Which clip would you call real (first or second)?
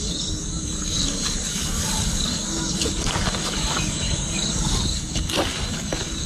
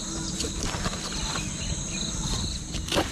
second